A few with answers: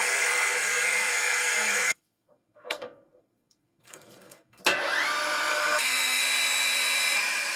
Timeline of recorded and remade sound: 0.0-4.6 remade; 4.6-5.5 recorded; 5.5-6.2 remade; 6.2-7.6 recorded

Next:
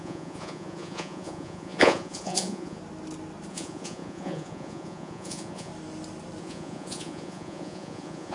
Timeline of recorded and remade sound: 0.0-2.8 remade; 2.8-3.5 recorded; 3.5-5.7 remade; 5.7-6.4 recorded; 6.4-8.3 remade

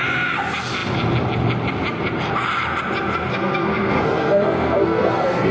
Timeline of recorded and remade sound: 0.0-3.3 recorded; 3.3-5.5 remade

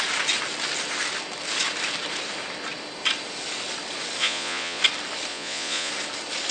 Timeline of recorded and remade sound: 0.0-4.2 recorded; 4.2-4.8 remade; 4.8-5.3 recorded; 5.3-5.9 remade; 5.9-6.5 recorded

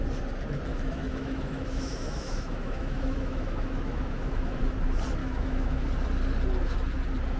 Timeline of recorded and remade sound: 0.0-0.7 recorded; 0.7-4.6 remade; 4.6-5.2 recorded; 5.2-5.8 remade; 5.8-7.4 recorded

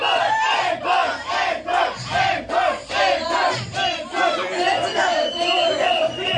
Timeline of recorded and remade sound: 0.0-6.4 recorded